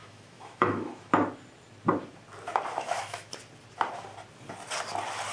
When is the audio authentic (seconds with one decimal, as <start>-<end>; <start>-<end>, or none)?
1.1-2.7; 3.3-5.3